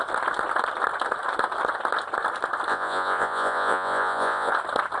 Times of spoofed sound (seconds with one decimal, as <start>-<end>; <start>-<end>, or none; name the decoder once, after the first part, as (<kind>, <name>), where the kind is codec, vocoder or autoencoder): 2.7-4.5 (vocoder, Vocos)